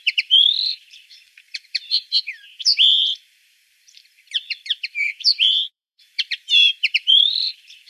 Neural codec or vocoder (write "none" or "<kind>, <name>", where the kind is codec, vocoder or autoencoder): vocoder, BigVGAN v2